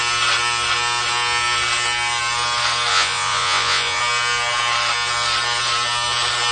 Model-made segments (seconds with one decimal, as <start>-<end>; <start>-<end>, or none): 2.9-4.0